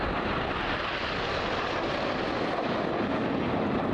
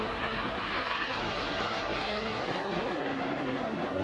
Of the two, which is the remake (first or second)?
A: second